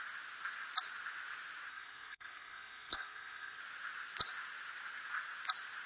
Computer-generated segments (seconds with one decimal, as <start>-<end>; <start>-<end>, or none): 1.7-3.6